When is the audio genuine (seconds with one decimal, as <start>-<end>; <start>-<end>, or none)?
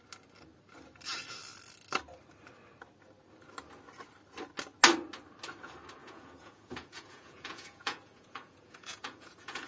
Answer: 0.0-6.0